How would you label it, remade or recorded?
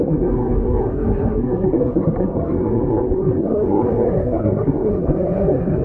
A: remade